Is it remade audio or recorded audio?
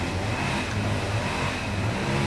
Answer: recorded